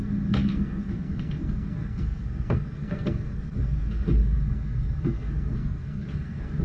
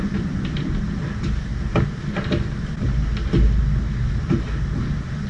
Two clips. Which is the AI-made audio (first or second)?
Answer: first